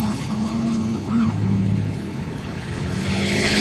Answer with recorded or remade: remade